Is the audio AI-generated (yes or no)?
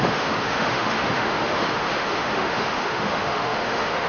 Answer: yes